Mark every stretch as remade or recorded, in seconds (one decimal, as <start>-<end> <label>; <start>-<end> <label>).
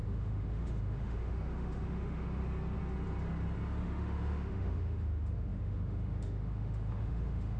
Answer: 0.0-2.4 remade; 2.4-3.8 recorded; 3.8-7.6 remade